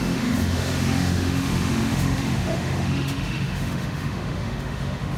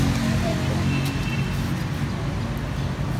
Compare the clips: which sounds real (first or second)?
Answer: second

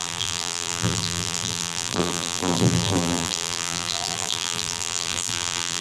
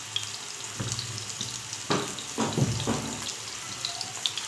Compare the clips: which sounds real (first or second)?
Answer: second